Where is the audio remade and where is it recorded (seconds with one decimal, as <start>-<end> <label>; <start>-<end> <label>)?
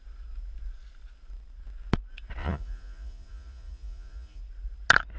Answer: 0.0-2.4 recorded; 2.4-4.4 remade; 4.4-5.2 recorded